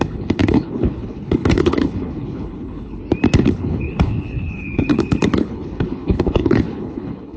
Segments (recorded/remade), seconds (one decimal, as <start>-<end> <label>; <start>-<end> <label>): 0.0-3.0 remade; 3.0-3.5 recorded; 3.5-7.4 remade